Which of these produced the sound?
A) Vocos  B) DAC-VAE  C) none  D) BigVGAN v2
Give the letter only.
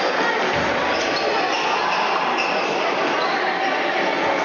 C